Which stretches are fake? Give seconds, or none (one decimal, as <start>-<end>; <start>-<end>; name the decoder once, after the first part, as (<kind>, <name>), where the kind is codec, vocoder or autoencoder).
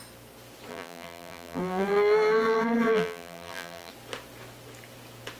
0.7-3.9 (vocoder, BigVGAN v2)